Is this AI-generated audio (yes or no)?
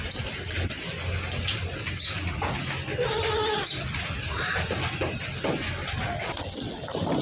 no